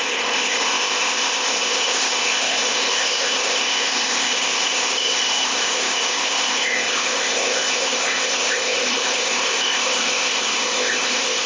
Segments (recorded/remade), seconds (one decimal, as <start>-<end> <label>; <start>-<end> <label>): 0.0-11.5 remade